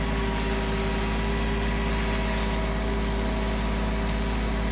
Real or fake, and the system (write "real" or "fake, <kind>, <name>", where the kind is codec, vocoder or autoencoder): real